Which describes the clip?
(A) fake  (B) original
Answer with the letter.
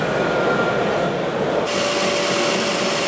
B